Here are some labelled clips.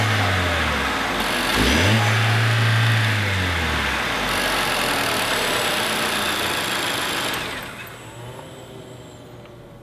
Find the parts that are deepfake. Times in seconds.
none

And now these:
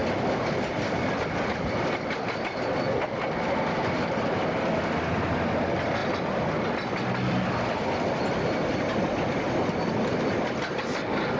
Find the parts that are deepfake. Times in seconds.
0.0-2.4 (vocoder, BigVGAN v2); 6.0-7.7

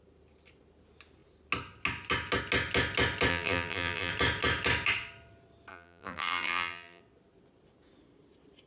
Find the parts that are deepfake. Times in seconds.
3.3-4.1 (vocoder, BigVGAN v2); 5.7-7.0

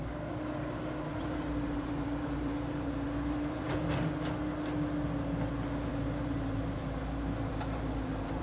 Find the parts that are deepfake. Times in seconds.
1.1-3.9 (vocoder, BigVGAN v2); 5.9-8.4